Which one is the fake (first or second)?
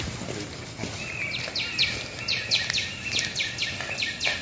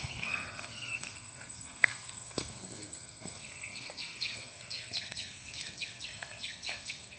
second